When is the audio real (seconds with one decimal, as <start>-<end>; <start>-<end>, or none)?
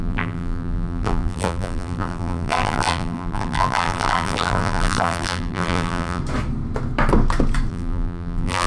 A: 6.2-7.7